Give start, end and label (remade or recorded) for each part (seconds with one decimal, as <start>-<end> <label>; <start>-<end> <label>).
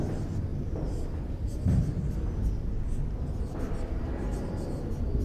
0.0-5.2 recorded